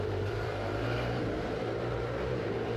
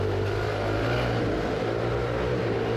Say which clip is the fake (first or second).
first